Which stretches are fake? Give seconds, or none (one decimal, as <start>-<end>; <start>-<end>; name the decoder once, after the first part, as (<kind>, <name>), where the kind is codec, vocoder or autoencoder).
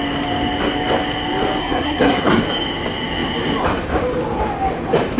1.6-2.4 (codec, SNAC)